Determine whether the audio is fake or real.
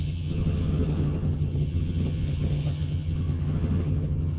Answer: fake